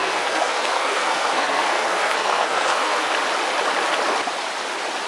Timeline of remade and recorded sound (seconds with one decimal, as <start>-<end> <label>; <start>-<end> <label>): 0.0-3.1 remade; 3.1-5.1 recorded